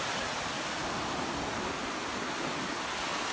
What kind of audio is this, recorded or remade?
recorded